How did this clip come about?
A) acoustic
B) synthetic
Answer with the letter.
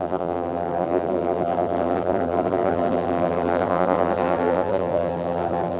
B